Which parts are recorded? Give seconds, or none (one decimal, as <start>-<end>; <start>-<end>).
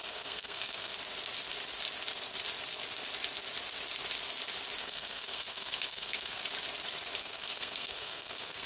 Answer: 0.9-4.8; 6.4-7.2